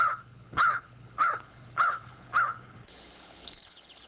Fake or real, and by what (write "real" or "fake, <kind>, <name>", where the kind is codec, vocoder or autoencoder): fake, codec, HILCodec